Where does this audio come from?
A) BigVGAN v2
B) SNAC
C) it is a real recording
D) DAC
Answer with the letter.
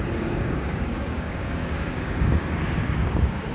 D